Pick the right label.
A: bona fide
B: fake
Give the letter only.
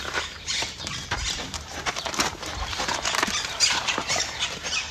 B